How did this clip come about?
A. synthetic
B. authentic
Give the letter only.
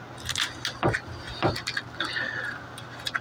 B